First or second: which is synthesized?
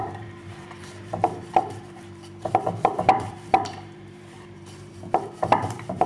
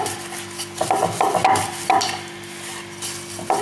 first